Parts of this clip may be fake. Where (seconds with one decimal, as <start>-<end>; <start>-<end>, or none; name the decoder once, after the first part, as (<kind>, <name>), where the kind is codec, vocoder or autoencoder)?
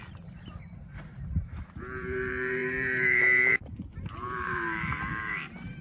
0.0-5.8 (vocoder, BigVGAN v2)